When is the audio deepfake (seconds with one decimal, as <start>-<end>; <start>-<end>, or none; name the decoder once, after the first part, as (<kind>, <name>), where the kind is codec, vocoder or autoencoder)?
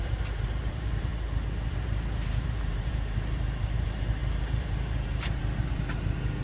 0.0-1.1 (vocoder, BigVGAN v2); 1.7-6.4